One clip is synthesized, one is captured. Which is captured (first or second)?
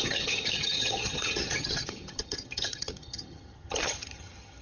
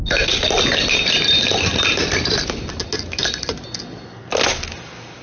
second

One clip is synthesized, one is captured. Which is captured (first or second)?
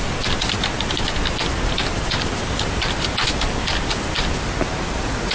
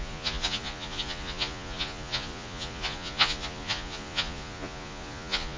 first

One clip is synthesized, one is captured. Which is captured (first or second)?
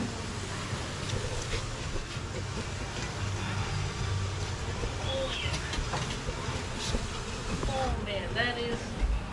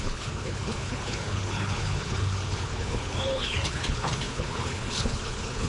first